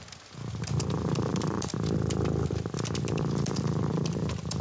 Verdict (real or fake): real